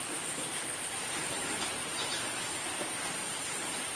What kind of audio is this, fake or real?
fake